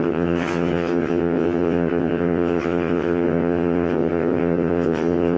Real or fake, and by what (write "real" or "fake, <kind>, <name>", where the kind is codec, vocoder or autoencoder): fake, vocoder, HiFi-GAN